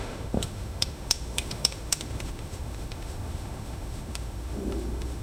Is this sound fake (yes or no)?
yes